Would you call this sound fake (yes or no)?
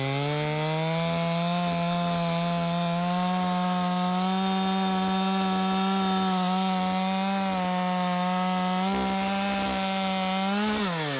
no